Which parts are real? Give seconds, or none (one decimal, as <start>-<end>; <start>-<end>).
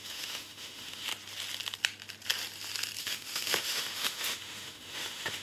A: 1.1-3.0